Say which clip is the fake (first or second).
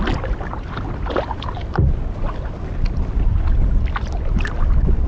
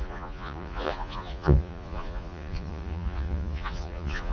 second